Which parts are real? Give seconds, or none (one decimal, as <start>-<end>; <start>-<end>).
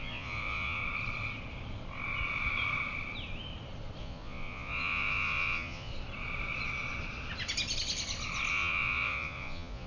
0.8-4.0; 5.9-8.5